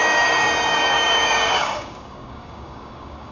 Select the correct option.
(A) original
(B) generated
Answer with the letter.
B